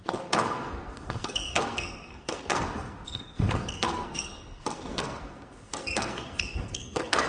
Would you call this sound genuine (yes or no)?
no